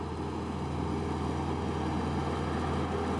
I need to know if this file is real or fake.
real